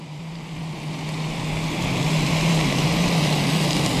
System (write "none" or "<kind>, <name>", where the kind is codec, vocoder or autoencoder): none